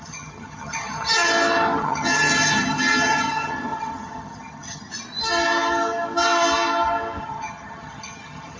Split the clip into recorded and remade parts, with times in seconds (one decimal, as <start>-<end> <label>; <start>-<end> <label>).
0.0-1.3 remade; 1.3-1.8 recorded; 1.8-4.9 remade; 4.9-7.2 recorded; 7.2-8.6 remade